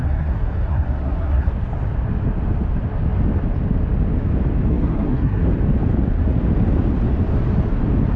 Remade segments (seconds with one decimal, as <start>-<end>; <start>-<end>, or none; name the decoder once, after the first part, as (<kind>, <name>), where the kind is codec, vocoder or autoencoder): 0.0-1.5 (codec, SNAC); 4.7-5.4